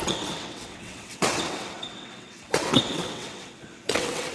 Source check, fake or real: fake